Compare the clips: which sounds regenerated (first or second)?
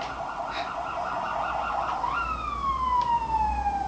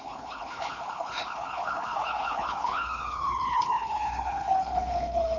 second